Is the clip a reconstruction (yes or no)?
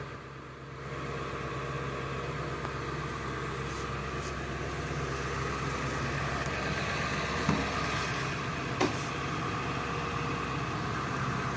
no